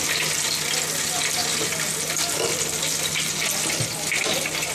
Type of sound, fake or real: real